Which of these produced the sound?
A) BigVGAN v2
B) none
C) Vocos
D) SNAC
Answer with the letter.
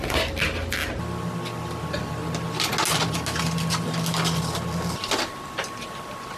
B